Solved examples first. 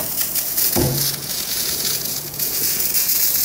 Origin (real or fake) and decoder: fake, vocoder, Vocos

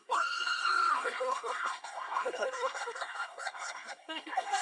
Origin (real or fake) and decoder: fake, codec, SNAC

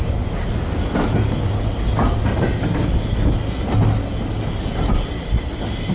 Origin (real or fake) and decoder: real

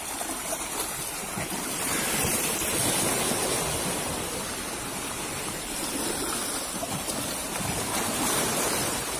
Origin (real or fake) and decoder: fake, vocoder, BigVGAN v2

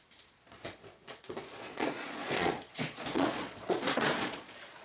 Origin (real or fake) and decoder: fake, vocoder, Vocos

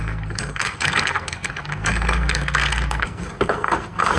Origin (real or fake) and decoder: fake, codec, SNAC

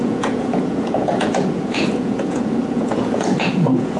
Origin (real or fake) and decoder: fake, vocoder, Vocos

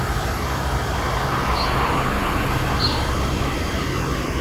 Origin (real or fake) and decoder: real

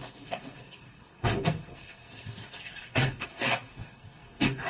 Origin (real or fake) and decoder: fake, codec, SNAC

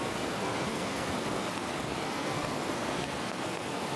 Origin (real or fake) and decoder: fake, codec, SNAC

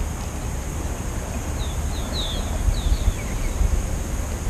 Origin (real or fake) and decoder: real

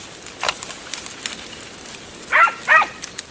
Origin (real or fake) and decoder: real